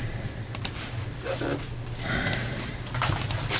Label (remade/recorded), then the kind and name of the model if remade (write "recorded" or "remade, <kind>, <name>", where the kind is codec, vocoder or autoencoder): recorded